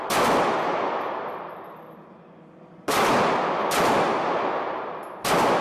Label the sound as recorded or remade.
recorded